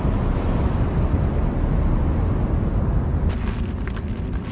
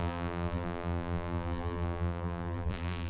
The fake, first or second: second